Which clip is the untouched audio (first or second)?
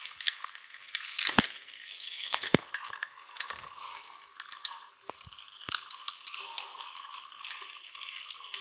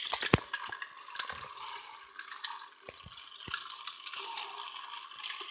second